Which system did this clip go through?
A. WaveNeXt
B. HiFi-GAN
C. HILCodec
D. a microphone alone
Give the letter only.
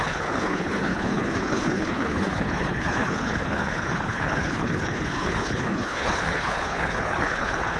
C